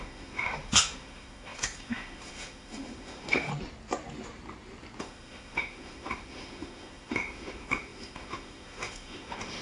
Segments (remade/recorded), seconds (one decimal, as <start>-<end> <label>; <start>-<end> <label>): 0.0-3.5 remade; 3.5-5.0 recorded; 5.0-9.6 remade